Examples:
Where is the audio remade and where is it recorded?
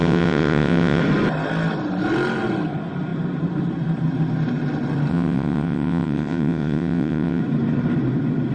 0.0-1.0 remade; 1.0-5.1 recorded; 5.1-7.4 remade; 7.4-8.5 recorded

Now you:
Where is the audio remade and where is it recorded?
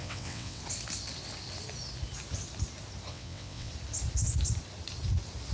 0.0-0.6 remade; 0.6-3.1 recorded; 3.1-3.7 remade; 3.7-5.5 recorded